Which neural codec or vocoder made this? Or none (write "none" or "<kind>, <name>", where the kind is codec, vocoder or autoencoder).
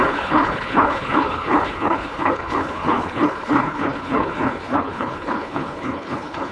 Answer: codec, HILCodec